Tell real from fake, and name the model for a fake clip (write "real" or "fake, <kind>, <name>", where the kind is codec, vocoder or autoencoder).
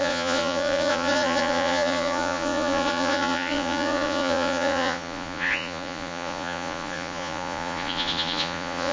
fake, vocoder, Vocos